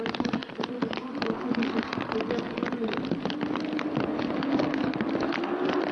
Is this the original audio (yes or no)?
yes